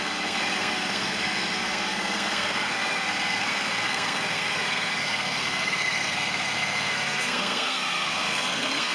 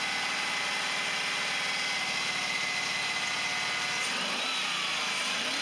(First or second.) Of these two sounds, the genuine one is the second